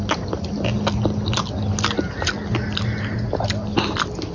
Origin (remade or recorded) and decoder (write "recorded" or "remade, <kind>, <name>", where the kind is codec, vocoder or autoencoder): recorded